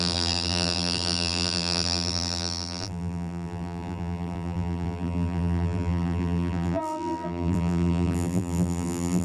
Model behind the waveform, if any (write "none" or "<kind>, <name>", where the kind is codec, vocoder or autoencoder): vocoder, BigVGAN v2